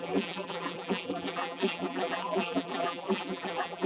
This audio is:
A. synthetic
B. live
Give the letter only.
A